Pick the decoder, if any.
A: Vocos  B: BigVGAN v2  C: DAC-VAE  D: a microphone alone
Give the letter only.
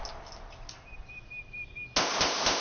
D